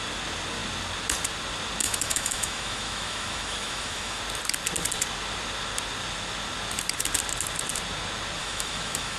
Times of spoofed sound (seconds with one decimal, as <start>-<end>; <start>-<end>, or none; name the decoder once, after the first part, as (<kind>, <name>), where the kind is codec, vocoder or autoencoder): 1.8-4.2 (autoencoder, DAC-VAE); 8.4-9.2